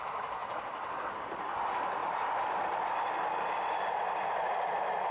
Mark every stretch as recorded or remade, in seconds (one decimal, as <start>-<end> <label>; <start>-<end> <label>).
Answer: 0.0-5.1 recorded